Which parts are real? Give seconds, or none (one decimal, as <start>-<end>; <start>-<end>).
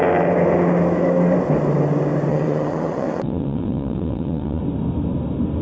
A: 0.0-2.3; 4.6-5.6